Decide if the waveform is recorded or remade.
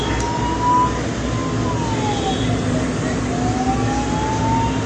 recorded